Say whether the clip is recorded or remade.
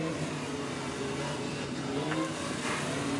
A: recorded